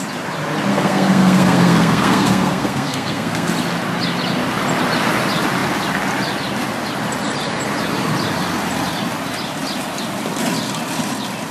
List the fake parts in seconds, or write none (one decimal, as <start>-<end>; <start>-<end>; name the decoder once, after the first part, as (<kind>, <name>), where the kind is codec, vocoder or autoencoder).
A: 0.7-3.5 (codec, SNAC)

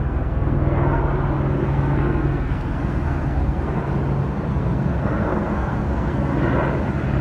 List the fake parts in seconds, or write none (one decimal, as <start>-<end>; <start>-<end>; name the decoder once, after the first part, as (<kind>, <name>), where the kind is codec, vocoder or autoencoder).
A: 0.0-1.0 (codec, SNAC); 1.6-3.9; 4.5-6.3

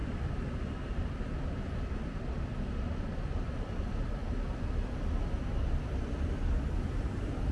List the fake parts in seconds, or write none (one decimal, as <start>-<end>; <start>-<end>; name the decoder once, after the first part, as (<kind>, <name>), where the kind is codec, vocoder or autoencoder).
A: 0.0-4.2 (vocoder, BigVGAN v2); 6.4-7.5

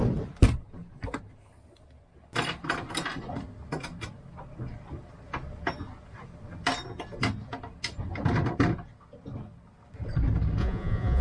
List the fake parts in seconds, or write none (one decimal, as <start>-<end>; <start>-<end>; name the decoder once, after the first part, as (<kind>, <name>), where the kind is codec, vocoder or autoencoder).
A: 10.6-11.2 (vocoder, Vocos)

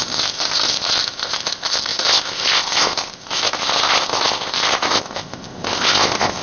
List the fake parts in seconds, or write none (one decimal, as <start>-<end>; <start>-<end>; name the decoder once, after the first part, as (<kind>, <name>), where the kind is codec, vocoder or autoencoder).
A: 0.0-6.4 (codec, ZipCodec)